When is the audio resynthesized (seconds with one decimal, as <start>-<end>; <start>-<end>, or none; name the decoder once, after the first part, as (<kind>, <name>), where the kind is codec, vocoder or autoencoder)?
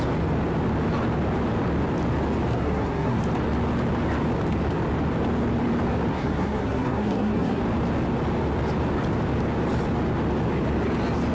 2.5-3.2 (codec, SNAC); 6.1-7.6